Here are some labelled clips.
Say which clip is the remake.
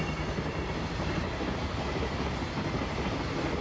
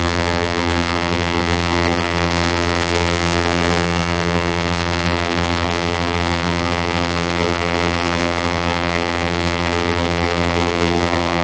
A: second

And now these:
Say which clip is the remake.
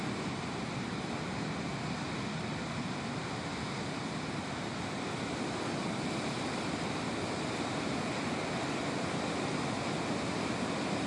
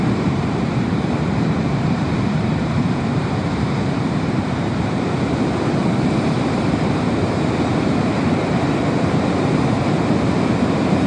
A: second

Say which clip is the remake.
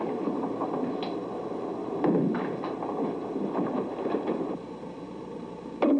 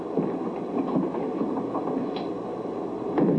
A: first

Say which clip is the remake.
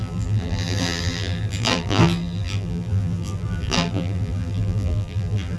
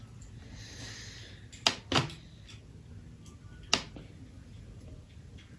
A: first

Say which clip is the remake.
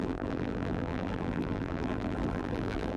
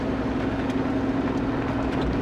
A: first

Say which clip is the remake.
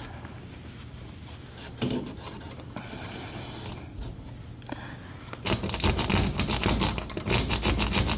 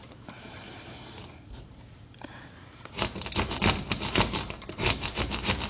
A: second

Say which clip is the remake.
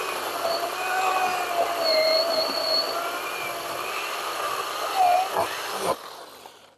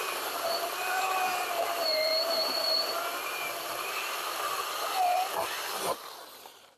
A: second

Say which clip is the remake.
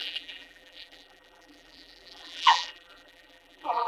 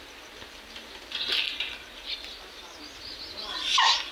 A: first